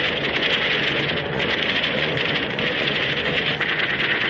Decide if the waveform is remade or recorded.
remade